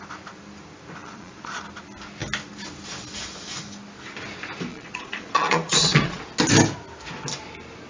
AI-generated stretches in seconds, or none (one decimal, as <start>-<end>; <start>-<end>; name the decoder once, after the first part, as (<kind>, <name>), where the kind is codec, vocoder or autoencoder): 1.0-1.6 (vocoder, Vocos); 4.7-6.2

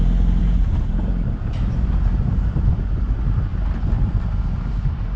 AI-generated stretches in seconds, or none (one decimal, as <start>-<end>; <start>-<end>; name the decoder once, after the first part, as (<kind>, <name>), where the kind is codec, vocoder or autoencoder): 0.4-2.7 (vocoder, BigVGAN v2)

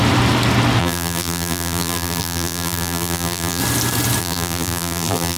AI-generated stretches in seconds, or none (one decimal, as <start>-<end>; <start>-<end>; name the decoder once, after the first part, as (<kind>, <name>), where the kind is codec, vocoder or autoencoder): 0.8-3.6 (vocoder, BigVGAN v2); 4.2-5.4